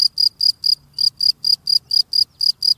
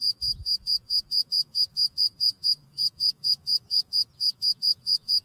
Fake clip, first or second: second